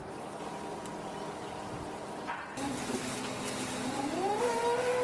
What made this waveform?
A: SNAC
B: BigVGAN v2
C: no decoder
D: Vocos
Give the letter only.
C